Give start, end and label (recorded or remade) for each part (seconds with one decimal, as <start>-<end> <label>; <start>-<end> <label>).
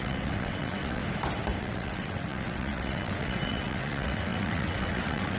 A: 0.0-1.0 remade; 1.0-1.6 recorded; 1.6-5.4 remade